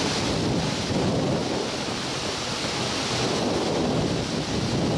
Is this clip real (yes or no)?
yes